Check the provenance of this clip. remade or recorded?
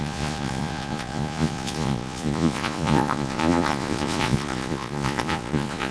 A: remade